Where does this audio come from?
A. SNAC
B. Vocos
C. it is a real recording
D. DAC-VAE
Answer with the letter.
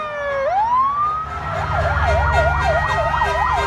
C